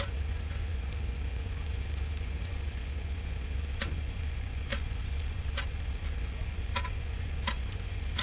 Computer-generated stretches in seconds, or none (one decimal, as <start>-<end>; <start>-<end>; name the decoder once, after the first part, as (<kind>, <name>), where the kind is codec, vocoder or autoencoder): 0.0-8.2 (vocoder, Vocos)